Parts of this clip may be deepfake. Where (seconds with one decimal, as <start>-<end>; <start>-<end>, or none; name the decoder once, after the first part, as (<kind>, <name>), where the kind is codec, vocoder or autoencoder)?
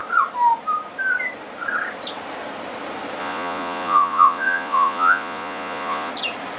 3.2-6.1 (vocoder, Vocos)